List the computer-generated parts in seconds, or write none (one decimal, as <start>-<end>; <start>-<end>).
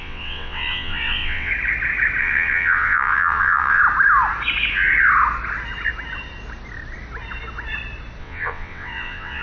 0.0-1.5; 2.2-3.8; 8.2-9.4